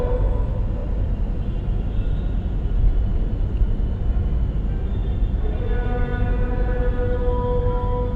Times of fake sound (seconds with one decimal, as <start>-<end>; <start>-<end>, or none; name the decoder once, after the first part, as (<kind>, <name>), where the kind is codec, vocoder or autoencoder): 0.8-1.4 (vocoder, BigVGAN v2); 3.1-4.0; 5.0-5.6